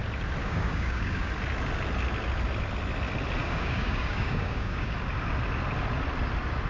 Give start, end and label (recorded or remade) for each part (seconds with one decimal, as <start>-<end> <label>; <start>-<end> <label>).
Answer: 0.0-0.4 recorded; 0.4-1.3 remade; 1.3-3.4 recorded; 3.4-4.9 remade; 4.9-6.7 recorded

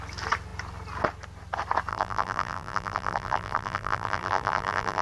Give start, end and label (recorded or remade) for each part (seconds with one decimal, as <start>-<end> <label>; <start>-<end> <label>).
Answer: 0.0-1.9 recorded; 1.9-5.0 remade